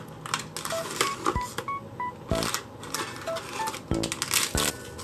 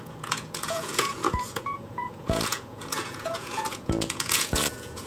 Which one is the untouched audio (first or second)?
first